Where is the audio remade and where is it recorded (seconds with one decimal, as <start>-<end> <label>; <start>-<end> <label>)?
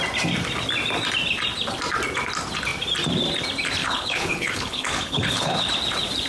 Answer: 0.0-3.8 recorded; 3.8-5.7 remade; 5.7-6.3 recorded